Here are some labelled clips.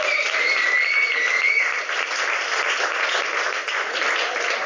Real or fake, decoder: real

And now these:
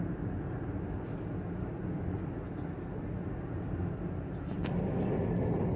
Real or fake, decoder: real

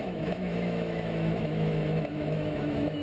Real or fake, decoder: fake, autoencoder, DAC-VAE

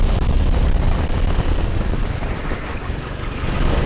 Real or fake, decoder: real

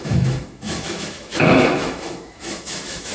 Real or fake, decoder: fake, autoencoder, DAC-VAE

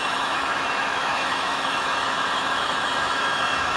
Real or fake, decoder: fake, autoencoder, DAC-VAE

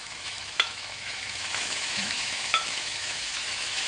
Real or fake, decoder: fake, autoencoder, DAC-VAE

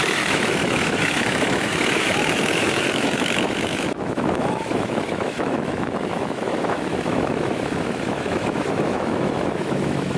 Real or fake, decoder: fake, autoencoder, DAC-VAE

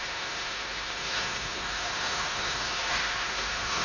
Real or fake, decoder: fake, autoencoder, DAC-VAE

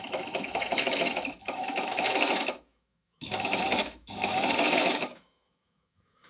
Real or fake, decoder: fake, autoencoder, DAC-VAE